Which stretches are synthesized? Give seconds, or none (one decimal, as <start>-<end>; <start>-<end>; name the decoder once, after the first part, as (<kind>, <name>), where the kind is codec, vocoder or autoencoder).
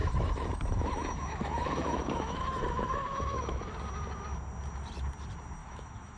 0.0-3.7 (autoencoder, DAC-VAE); 5.6-6.2